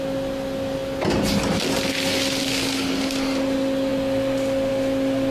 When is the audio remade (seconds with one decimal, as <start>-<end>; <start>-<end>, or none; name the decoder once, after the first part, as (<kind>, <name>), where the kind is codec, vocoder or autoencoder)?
none